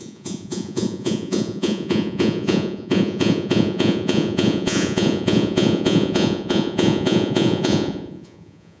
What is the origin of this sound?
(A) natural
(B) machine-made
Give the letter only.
B